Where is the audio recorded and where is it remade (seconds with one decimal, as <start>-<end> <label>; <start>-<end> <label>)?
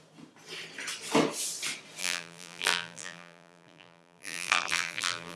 0.0-2.0 recorded; 2.0-5.4 remade